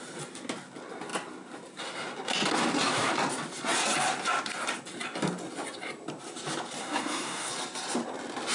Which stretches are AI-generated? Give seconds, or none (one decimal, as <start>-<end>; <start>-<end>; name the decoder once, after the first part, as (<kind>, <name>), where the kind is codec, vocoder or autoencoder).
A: 6.8-7.5 (codec, SNAC)